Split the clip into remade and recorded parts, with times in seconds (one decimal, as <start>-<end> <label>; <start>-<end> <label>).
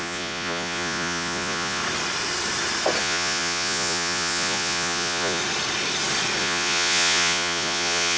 0.0-1.8 remade; 1.8-3.0 recorded; 3.0-5.4 remade; 5.4-6.4 recorded; 6.4-8.2 remade